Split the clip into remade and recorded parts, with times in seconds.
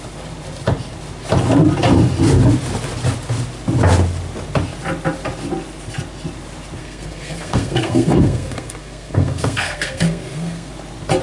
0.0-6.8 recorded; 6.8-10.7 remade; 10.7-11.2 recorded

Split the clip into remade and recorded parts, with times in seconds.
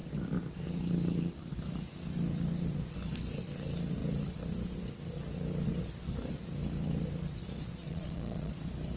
0.0-7.8 recorded; 7.8-8.5 remade; 8.5-9.0 recorded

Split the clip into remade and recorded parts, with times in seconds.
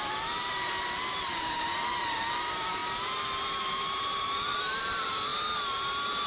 0.0-2.8 remade; 2.8-3.4 recorded; 3.4-5.3 remade; 5.3-6.3 recorded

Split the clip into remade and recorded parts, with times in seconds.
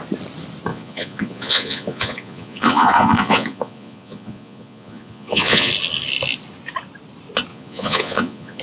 0.0-0.7 recorded; 0.7-5.7 remade; 5.7-7.5 recorded; 7.5-8.6 remade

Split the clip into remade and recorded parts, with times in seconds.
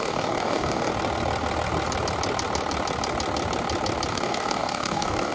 0.0-0.9 remade; 0.9-4.1 recorded; 4.1-5.3 remade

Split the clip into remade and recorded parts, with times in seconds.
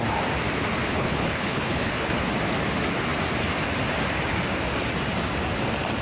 0.0-0.9 recorded; 0.9-2.3 remade; 2.3-6.0 recorded